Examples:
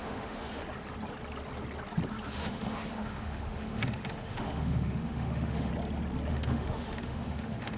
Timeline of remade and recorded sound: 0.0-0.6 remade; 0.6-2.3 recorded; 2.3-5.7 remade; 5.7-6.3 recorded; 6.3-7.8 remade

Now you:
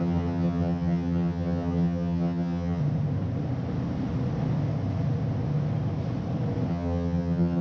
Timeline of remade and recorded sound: 0.0-2.8 remade; 2.8-6.7 recorded; 6.7-7.6 remade